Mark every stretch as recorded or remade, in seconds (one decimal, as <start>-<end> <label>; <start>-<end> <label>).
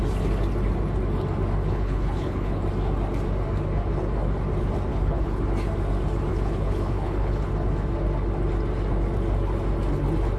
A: 0.0-1.6 recorded; 1.6-2.6 remade; 2.6-4.9 recorded; 4.9-5.4 remade; 5.4-6.3 recorded; 6.3-7.5 remade; 7.5-10.4 recorded